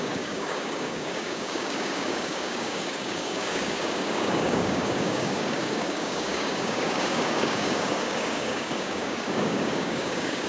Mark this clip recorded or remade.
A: remade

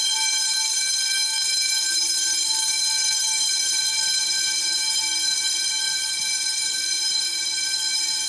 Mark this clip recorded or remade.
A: recorded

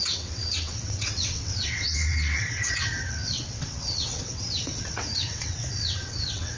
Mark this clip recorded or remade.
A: remade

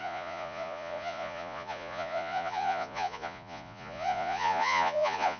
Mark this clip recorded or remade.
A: remade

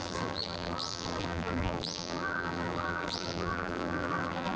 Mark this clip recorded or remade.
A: remade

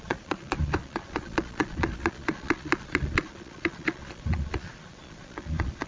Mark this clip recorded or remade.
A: remade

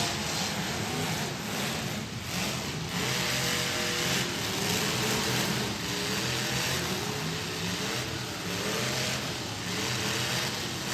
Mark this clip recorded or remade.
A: recorded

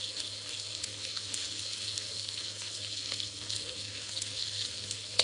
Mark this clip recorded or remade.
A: remade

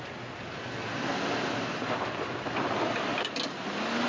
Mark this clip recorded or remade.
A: recorded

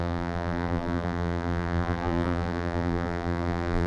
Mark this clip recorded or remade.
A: remade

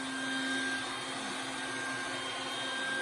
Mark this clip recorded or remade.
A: recorded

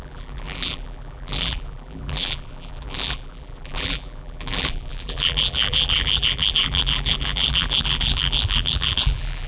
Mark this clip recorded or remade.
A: remade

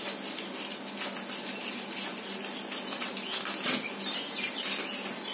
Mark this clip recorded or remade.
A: recorded